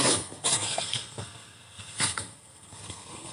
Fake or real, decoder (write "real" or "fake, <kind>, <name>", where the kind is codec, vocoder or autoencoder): fake, codec, SNAC